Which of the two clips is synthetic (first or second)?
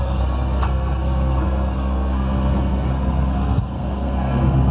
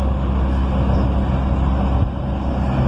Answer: first